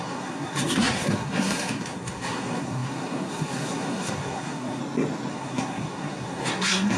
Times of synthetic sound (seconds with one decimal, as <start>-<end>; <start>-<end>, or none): 0.0-4.8; 5.3-7.0